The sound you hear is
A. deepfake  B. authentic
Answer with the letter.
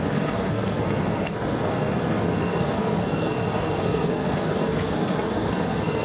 A